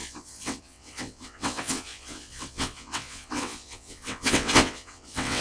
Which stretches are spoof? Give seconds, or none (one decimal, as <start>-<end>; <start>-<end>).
0.0-5.4